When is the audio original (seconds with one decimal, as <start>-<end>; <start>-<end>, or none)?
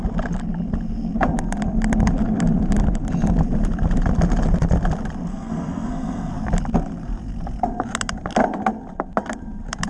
0.0-5.3; 6.3-9.9